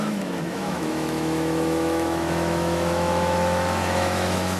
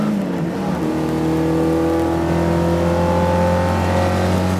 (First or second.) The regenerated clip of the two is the first